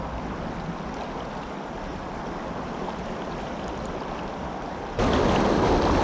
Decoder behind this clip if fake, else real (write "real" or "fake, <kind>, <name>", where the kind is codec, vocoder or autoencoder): real